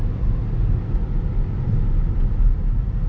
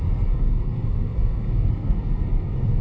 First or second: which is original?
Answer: first